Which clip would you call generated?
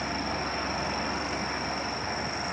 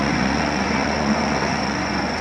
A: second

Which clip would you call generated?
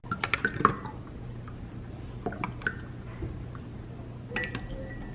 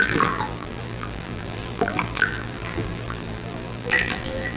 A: second